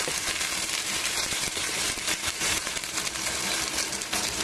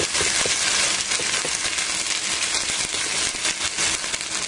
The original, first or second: second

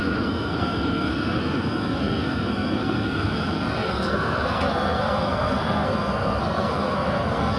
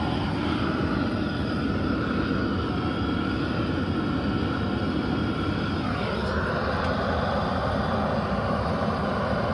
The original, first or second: second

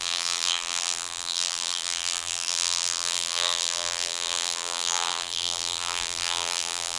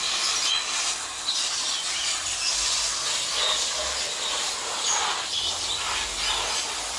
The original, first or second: second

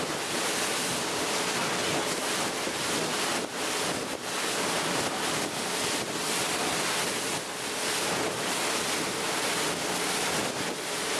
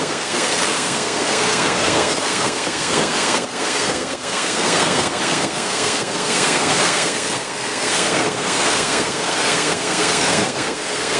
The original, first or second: first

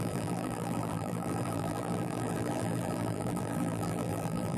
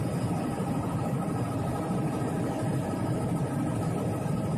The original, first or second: second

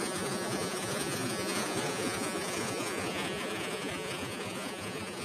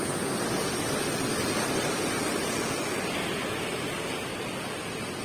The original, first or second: second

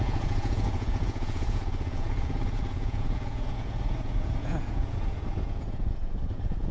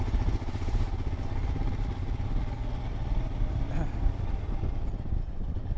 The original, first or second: second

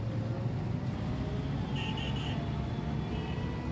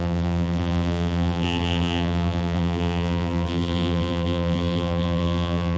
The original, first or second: first